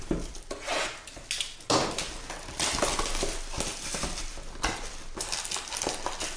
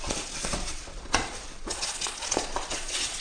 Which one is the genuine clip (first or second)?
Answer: first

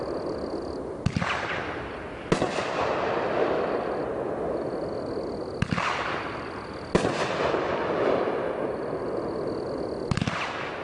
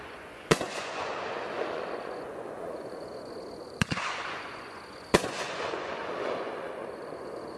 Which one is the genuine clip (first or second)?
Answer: first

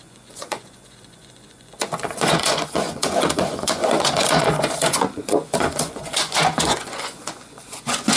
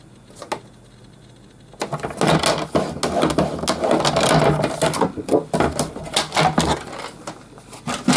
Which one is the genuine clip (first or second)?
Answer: second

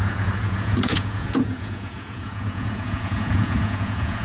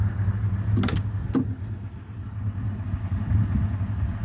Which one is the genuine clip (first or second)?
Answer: second